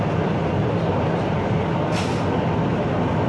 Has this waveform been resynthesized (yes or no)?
no